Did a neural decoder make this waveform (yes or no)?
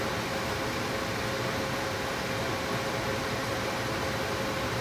no